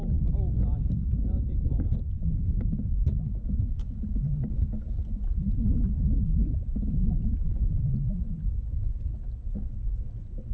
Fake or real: real